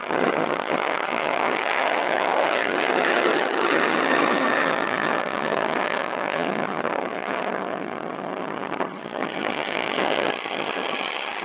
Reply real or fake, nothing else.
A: fake